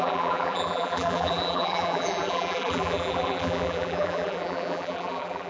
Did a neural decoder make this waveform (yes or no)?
yes